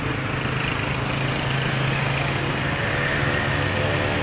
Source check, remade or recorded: recorded